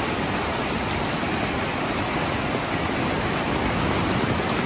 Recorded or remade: recorded